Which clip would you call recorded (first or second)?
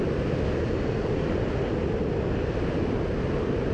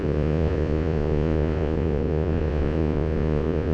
first